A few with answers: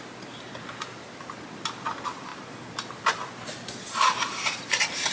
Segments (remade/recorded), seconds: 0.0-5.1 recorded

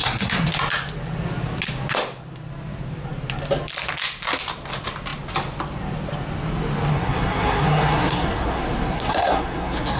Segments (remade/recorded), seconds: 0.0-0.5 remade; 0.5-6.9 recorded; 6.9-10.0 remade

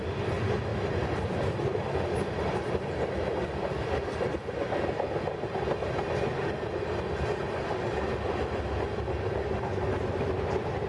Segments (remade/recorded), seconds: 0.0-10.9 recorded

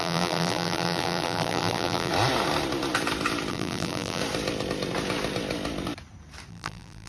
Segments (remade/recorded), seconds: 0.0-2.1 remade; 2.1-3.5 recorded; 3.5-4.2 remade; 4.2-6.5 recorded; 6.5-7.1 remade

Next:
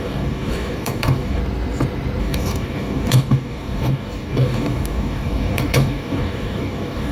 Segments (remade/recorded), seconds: 0.0-1.4 remade; 1.4-2.2 recorded; 2.2-7.1 remade

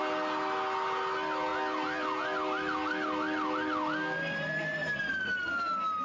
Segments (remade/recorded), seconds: 0.0-6.0 recorded

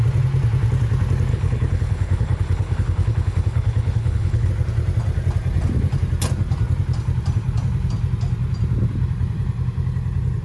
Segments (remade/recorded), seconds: 0.0-1.3 recorded; 1.3-4.5 remade; 4.5-10.4 recorded

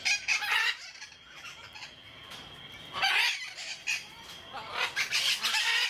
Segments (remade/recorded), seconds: 0.0-1.0 recorded; 1.0-2.3 remade; 2.3-5.9 recorded